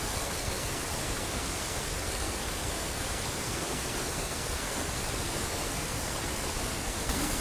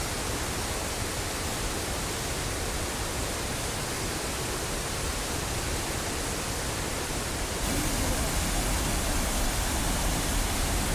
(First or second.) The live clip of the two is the second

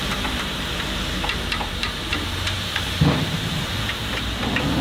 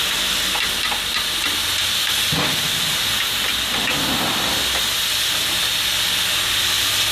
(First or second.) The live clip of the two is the second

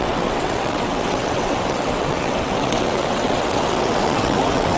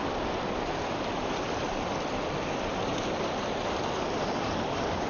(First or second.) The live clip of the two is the second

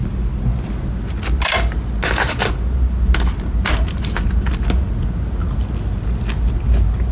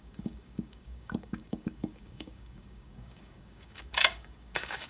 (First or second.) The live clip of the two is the first